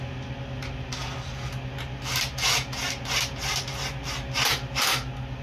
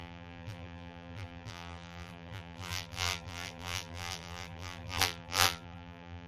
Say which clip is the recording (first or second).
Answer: first